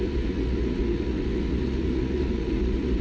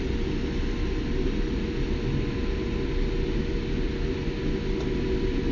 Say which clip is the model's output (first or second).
first